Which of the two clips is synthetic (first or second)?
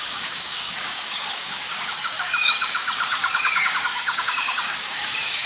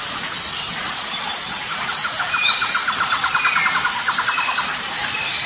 first